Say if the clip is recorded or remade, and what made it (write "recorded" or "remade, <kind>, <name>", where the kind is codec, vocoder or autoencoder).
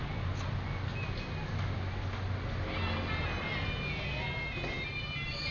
recorded